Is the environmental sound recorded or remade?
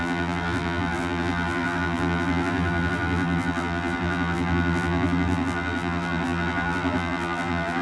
remade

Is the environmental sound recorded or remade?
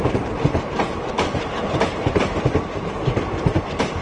remade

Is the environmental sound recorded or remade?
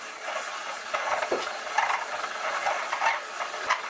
recorded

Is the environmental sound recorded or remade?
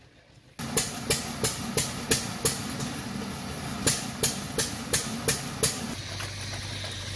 recorded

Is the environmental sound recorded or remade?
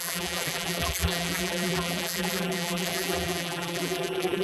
remade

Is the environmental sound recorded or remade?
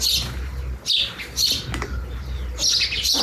recorded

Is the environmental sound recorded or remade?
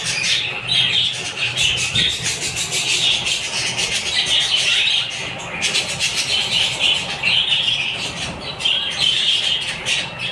remade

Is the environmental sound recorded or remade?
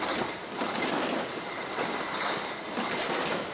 recorded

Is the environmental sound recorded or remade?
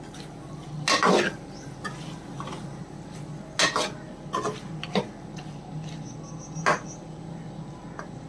recorded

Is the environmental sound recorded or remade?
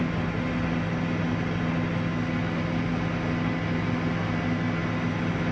recorded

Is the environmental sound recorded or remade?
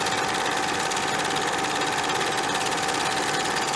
recorded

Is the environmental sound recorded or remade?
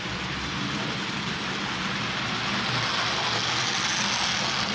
recorded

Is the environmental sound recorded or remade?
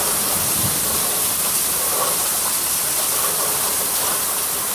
recorded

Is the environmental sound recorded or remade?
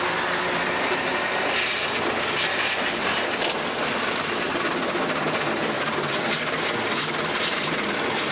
remade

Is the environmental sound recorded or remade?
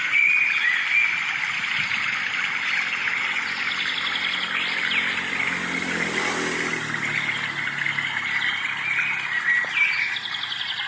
recorded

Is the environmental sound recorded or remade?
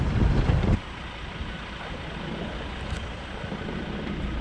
remade